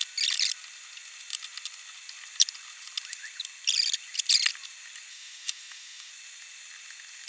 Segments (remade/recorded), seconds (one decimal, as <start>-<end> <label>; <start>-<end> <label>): 0.0-5.1 recorded; 5.1-6.1 remade; 6.1-7.3 recorded